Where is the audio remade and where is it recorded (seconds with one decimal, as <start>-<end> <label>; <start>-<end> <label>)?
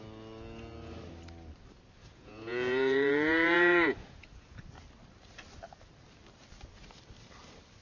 0.0-2.0 recorded; 2.0-4.6 remade; 4.6-7.8 recorded